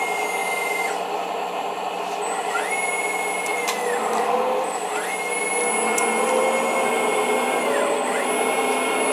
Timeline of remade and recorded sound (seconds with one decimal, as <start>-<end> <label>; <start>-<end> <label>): 0.0-9.1 recorded